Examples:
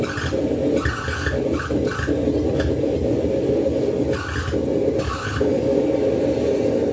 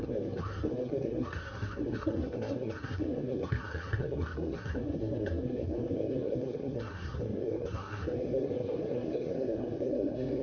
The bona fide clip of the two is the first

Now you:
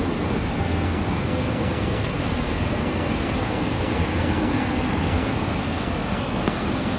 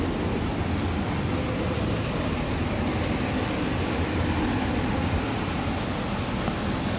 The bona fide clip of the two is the second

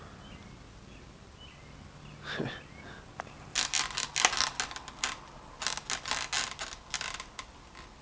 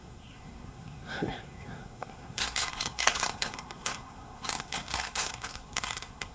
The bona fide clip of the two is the first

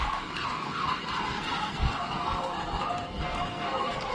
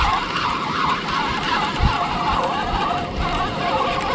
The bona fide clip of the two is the second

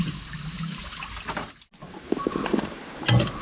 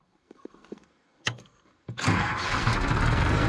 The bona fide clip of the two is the first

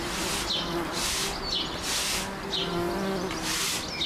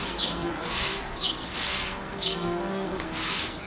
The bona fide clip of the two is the first